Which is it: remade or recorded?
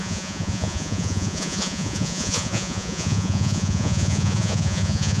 remade